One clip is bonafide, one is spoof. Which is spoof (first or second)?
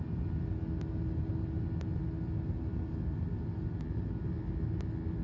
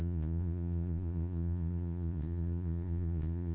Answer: second